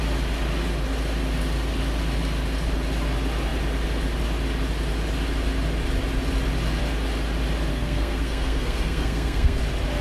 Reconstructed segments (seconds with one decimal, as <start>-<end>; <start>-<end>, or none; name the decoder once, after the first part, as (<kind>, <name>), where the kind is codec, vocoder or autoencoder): 7.7-9.6 (codec, SNAC)